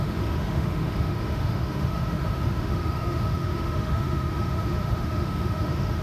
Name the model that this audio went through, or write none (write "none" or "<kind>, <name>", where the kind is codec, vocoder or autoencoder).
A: autoencoder, DAC-VAE